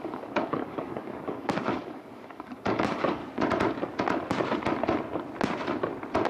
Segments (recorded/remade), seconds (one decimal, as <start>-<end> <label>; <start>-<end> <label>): 0.0-3.2 remade; 3.2-6.3 recorded